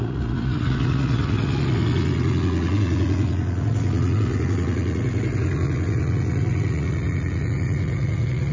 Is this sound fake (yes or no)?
yes